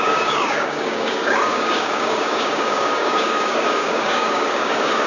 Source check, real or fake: fake